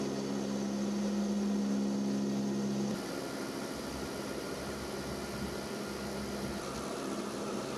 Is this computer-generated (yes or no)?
no